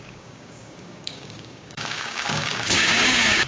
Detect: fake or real fake